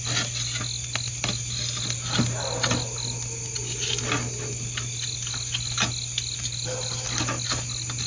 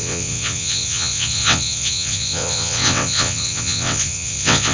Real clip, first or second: first